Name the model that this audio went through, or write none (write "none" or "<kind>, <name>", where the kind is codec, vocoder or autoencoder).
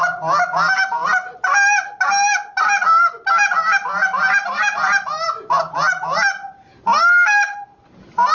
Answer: none